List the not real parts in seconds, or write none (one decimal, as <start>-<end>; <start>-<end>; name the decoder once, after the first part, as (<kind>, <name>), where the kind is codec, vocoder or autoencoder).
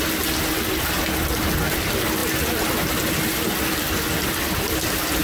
none